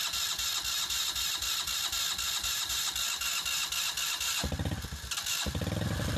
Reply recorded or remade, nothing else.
recorded